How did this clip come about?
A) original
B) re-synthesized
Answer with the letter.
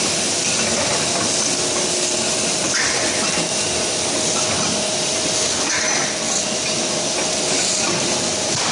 A